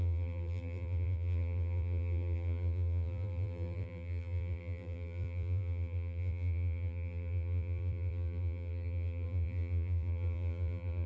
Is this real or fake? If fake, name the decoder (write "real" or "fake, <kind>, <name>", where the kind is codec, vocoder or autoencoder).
fake, vocoder, BigVGAN v2